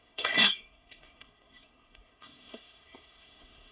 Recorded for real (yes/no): no